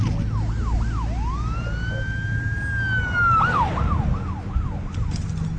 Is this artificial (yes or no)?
no